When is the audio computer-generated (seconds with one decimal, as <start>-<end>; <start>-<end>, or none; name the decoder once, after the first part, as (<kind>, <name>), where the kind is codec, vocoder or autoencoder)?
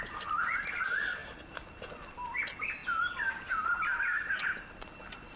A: none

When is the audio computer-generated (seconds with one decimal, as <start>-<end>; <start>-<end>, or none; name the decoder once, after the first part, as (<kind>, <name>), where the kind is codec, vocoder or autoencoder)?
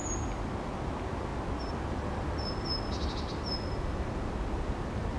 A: none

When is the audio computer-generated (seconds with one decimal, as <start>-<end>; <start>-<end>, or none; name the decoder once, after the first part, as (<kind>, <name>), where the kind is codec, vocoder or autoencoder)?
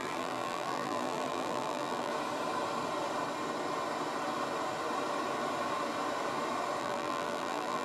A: 0.0-2.1 (vocoder, BigVGAN v2); 6.8-7.8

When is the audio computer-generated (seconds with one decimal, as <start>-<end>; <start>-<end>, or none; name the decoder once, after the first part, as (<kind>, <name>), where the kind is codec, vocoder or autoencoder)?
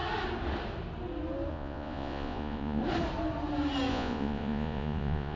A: 1.5-2.8 (vocoder, Vocos); 3.9-5.4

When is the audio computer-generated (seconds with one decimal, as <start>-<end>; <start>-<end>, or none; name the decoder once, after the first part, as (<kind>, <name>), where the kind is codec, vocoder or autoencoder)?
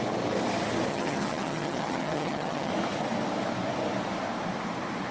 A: 0.9-2.7 (vocoder, HiFi-GAN)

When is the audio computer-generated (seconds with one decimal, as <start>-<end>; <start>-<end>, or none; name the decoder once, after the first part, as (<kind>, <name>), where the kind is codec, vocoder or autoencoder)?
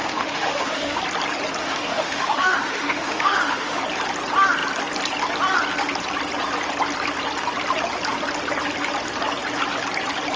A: 0.0-1.0 (autoencoder, DAC-VAE); 1.6-3.8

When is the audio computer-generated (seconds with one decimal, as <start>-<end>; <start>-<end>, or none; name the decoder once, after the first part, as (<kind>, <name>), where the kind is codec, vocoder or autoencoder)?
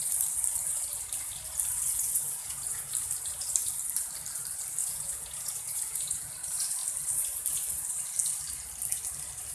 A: 1.7-2.9 (vocoder, Vocos); 4.8-6.3